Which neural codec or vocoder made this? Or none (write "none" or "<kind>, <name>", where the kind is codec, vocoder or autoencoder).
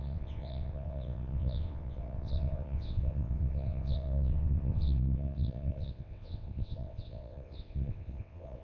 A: vocoder, WaveNeXt